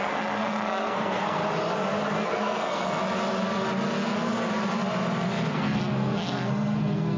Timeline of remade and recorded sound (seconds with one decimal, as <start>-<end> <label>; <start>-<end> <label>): 0.0-1.4 remade; 1.4-2.2 recorded; 2.2-3.0 remade; 3.0-5.5 recorded; 5.5-7.2 remade